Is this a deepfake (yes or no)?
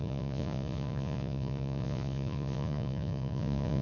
yes